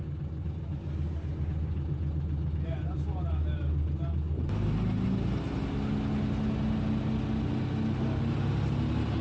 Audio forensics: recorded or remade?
recorded